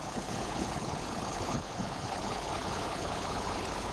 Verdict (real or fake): fake